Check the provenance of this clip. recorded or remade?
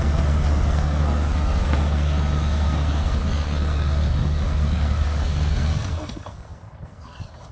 remade